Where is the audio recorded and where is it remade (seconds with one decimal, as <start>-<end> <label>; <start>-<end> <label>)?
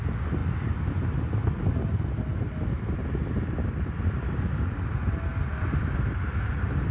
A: 0.0-6.9 recorded